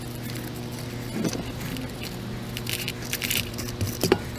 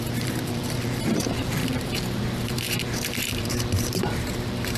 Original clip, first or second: first